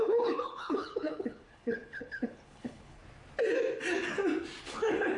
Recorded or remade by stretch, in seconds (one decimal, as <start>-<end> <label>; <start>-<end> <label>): 0.0-3.0 remade; 3.0-4.6 recorded; 4.6-5.2 remade